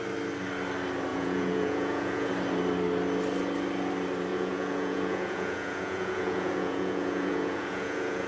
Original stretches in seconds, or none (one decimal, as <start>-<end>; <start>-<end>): 0.0-1.1; 2.3-4.3